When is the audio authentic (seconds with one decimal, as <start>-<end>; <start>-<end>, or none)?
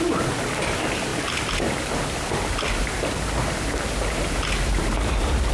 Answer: 0.0-5.5